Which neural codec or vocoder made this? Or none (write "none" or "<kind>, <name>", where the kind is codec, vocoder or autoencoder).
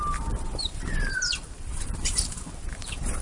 vocoder, BigVGAN v2